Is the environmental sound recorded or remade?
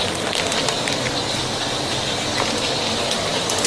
recorded